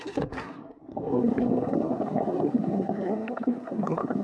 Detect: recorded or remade remade